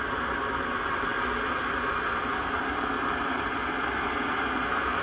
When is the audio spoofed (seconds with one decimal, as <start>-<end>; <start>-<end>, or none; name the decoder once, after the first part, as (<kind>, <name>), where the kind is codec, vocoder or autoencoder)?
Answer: none